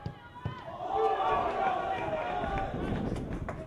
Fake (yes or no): no